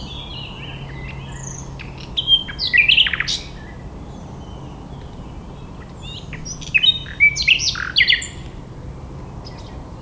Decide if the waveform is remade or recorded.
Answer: recorded